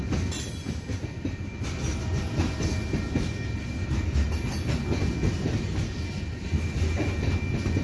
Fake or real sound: real